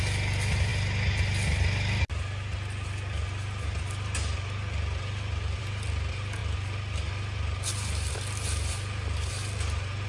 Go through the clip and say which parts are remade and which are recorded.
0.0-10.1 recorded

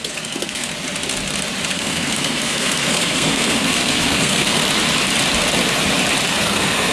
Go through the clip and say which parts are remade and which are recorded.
0.0-0.7 remade; 0.7-1.7 recorded; 1.7-4.6 remade; 4.6-6.3 recorded; 6.3-6.9 remade

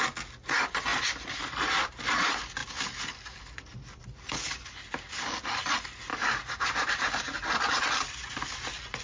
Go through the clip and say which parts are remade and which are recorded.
0.0-0.9 recorded; 0.9-2.0 remade; 2.0-6.1 recorded; 6.1-7.5 remade; 7.5-9.0 recorded

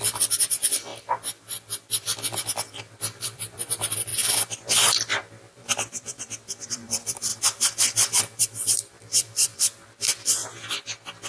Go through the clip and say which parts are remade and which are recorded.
0.0-0.9 remade; 0.9-2.8 recorded; 2.8-4.1 remade; 4.1-5.3 recorded; 5.3-7.3 remade; 7.3-8.4 recorded; 8.4-10.4 remade; 10.4-11.3 recorded

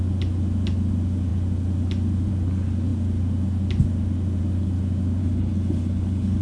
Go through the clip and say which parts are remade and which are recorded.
0.0-5.2 recorded; 5.2-6.4 remade

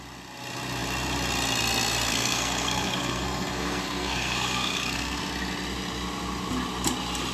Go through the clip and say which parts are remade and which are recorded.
0.0-2.1 recorded; 2.1-5.2 remade; 5.2-7.3 recorded

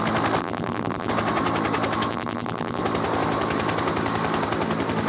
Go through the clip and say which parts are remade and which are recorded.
0.0-0.4 recorded; 0.4-1.1 remade; 1.1-2.1 recorded; 2.1-2.8 remade; 2.8-5.1 recorded